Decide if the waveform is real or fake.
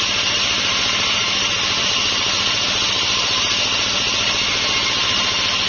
real